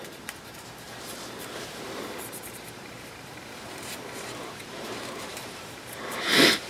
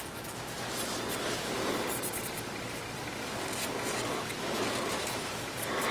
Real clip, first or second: second